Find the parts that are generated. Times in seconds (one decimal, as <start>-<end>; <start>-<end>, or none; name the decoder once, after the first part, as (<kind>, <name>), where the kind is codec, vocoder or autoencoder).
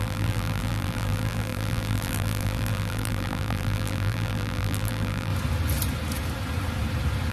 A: 0.0-5.3 (vocoder, BigVGAN v2)